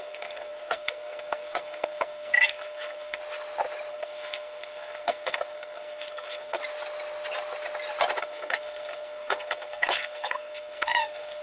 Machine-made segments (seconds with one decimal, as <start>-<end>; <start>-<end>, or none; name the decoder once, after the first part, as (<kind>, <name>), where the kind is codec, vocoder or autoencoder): 0.0-3.2 (codec, SNAC); 3.9-6.6; 8.2-11.4